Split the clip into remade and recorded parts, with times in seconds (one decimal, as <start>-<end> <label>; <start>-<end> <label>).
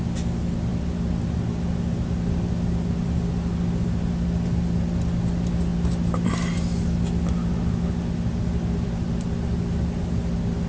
0.0-10.7 recorded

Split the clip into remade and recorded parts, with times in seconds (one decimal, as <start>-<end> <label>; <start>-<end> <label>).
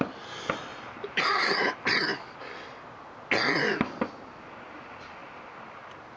0.0-0.7 recorded; 0.7-1.9 remade; 1.9-5.2 recorded; 5.2-6.2 remade